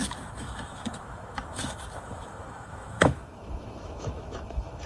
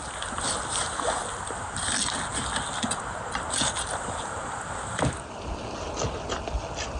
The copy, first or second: first